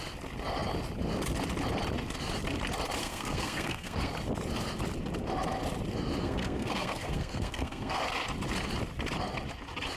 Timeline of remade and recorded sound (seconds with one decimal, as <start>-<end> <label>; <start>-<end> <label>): 0.0-3.0 recorded; 3.0-4.1 remade; 4.1-6.2 recorded; 6.2-8.0 remade; 8.0-10.0 recorded